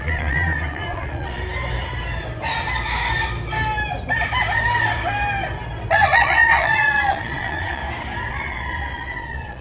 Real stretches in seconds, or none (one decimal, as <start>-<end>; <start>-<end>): 1.4-5.9; 7.8-8.3